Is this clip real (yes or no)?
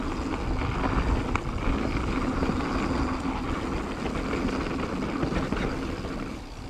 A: yes